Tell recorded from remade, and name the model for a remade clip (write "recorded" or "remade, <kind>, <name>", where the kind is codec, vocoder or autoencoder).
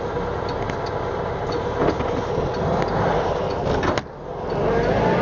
recorded